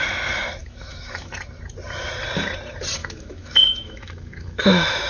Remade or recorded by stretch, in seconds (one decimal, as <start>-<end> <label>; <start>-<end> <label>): 0.0-0.6 recorded; 0.6-1.3 remade; 1.3-3.0 recorded; 3.0-5.1 remade